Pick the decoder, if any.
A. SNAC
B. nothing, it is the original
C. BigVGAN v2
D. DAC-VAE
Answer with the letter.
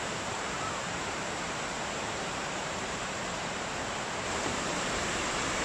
C